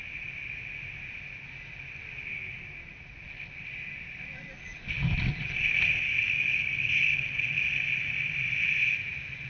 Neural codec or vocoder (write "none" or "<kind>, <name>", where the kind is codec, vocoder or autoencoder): none